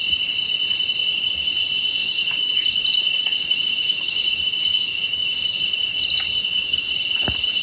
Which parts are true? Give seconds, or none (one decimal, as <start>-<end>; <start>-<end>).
0.0-2.0; 6.0-6.4; 6.9-7.6